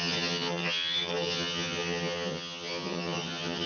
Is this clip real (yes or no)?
no